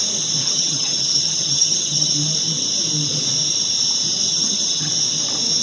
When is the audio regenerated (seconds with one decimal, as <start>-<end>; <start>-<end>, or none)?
0.4-2.1; 4.3-4.9

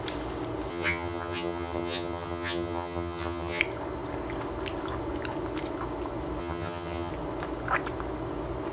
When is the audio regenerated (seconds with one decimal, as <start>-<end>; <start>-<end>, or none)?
0.7-3.6; 6.4-7.1

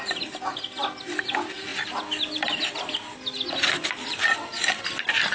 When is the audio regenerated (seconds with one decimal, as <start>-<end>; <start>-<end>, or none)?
none

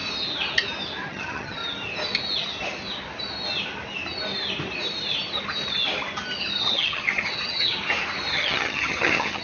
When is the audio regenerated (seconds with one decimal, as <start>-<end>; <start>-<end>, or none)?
1.1-1.6; 6.6-7.7; 8.3-9.4

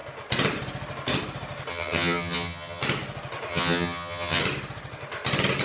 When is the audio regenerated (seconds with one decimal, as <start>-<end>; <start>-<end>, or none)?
1.7-2.8; 3.5-4.4

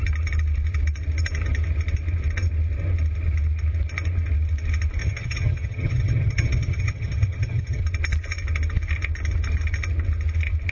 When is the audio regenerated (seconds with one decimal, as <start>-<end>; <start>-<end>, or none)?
5.0-7.8

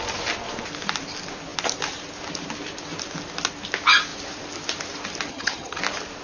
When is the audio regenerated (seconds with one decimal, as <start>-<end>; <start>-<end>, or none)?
5.3-5.8

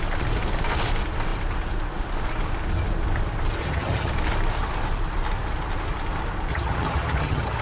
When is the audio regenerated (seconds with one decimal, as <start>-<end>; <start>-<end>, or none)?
3.6-4.1; 6.5-7.6